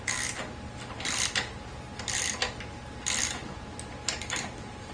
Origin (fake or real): real